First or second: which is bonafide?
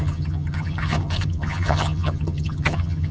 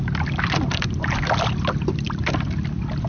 second